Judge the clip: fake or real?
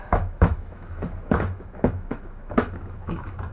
fake